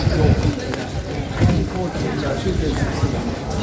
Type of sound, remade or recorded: recorded